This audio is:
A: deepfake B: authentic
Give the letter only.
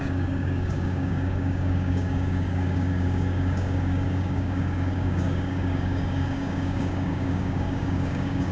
A